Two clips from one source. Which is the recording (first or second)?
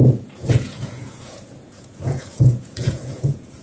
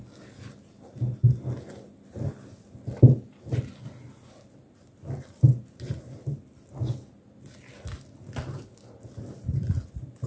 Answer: second